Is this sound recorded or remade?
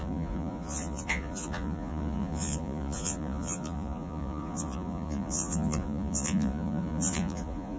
remade